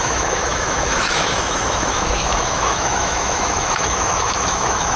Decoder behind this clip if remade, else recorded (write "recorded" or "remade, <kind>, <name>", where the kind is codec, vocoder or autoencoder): remade, autoencoder, DAC-VAE